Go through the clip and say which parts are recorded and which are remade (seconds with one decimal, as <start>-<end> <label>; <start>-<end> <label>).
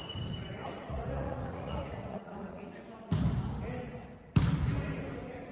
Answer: 0.0-0.6 recorded; 0.6-2.8 remade; 2.8-5.5 recorded